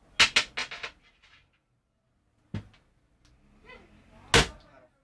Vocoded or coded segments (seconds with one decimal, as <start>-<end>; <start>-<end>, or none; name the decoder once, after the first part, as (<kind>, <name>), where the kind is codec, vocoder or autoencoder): none